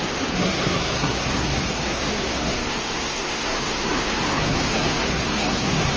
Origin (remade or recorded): remade